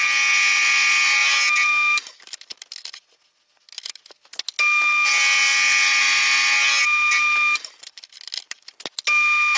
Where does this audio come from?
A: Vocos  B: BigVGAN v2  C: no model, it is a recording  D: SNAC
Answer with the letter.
C